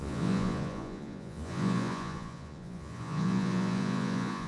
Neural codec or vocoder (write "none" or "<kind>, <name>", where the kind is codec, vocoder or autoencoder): vocoder, Vocos